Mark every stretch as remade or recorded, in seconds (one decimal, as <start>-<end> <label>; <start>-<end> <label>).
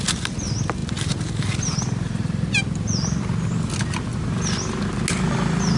0.0-5.8 recorded